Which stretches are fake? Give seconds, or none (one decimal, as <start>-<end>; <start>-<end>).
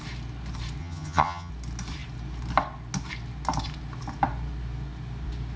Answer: 0.8-1.5